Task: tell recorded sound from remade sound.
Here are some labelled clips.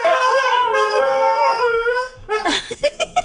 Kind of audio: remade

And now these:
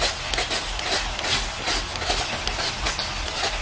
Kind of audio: recorded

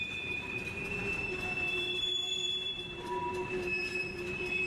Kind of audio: remade